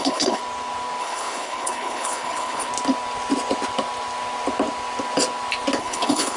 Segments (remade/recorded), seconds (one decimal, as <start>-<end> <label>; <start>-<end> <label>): 0.0-0.4 remade; 0.4-1.0 recorded; 1.0-2.7 remade; 2.7-5.8 recorded; 5.8-6.4 remade